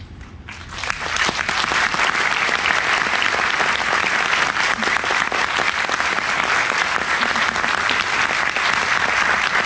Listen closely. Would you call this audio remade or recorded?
recorded